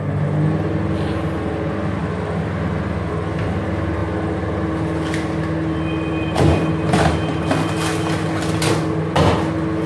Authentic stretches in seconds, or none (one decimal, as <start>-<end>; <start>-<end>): 0.0-4.0; 7.7-9.9